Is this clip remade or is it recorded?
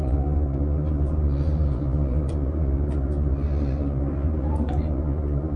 remade